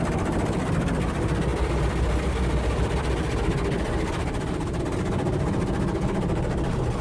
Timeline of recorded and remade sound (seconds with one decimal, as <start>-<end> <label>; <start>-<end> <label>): 0.0-1.5 recorded; 1.5-4.8 remade; 4.8-7.0 recorded